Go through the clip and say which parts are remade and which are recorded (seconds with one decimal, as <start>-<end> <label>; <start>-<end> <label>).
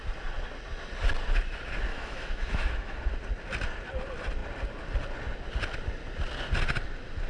0.0-1.9 recorded; 1.9-3.0 remade; 3.0-7.3 recorded